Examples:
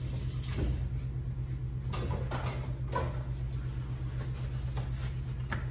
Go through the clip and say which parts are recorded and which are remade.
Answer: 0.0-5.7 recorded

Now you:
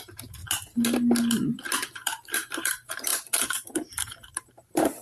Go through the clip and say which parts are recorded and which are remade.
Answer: 0.0-0.4 remade; 0.4-1.9 recorded; 1.9-5.0 remade

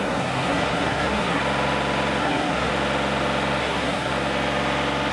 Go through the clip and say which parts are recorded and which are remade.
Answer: 0.0-1.4 remade; 1.4-2.2 recorded; 2.2-2.7 remade; 2.7-3.6 recorded; 3.6-4.1 remade; 4.1-5.1 recorded

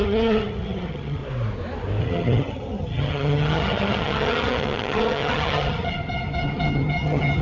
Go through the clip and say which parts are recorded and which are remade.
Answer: 0.0-1.2 remade; 1.2-2.0 recorded; 2.0-7.4 remade

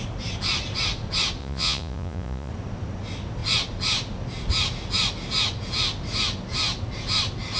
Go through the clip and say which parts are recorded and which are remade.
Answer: 0.0-1.4 recorded; 1.4-2.5 remade; 2.5-7.6 recorded

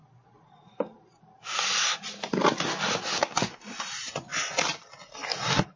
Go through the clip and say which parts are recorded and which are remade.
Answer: 0.0-5.8 recorded

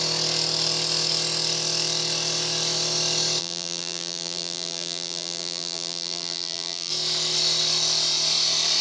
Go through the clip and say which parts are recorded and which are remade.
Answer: 0.0-3.4 recorded; 3.4-6.9 remade; 6.9-8.8 recorded